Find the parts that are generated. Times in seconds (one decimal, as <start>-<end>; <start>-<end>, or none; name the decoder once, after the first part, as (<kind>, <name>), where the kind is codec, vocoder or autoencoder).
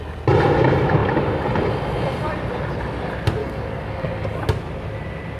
3.4-4.4 (codec, DAC)